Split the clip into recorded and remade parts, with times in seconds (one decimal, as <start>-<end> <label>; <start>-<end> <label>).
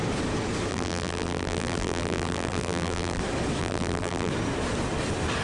0.0-0.7 recorded; 0.7-3.2 remade; 3.2-3.6 recorded; 3.6-4.3 remade; 4.3-5.4 recorded